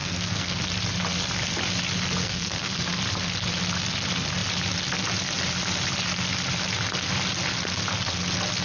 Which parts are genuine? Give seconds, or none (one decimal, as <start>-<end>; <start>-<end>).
0.6-2.2; 2.8-8.6